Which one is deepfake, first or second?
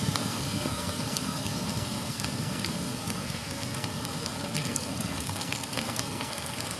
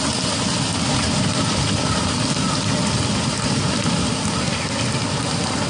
first